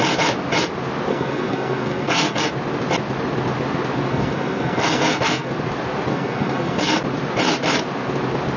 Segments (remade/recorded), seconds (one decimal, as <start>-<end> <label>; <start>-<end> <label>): 0.0-1.1 recorded; 1.1-2.5 remade; 2.5-4.1 recorded; 4.1-5.5 remade; 5.5-6.1 recorded; 6.1-7.0 remade; 7.0-8.6 recorded